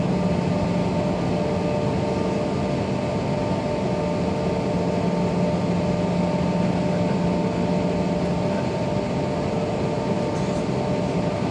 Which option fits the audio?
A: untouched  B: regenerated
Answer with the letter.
A